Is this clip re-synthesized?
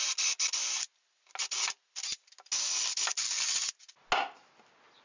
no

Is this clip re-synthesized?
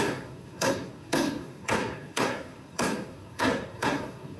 yes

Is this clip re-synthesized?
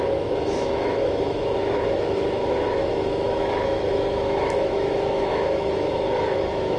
yes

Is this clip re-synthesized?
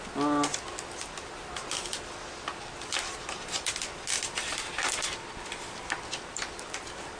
yes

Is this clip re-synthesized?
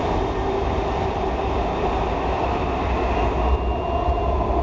no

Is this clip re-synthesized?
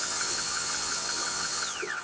yes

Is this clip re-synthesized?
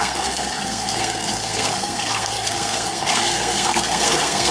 yes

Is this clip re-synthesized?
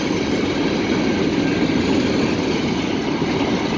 no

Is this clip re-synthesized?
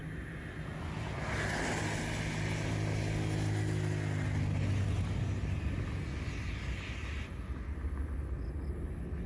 no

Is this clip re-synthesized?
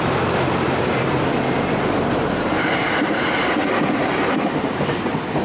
yes